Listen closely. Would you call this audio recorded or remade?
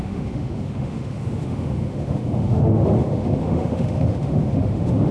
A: remade